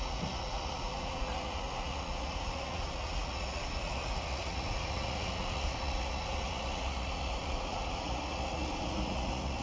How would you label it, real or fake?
fake